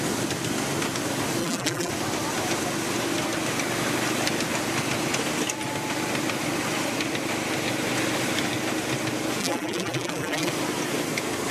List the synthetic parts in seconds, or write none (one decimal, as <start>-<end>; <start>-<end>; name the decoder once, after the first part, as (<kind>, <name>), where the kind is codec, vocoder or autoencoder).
1.4-1.9 (vocoder, BigVGAN v2); 9.4-10.5